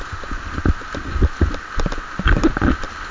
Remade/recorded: recorded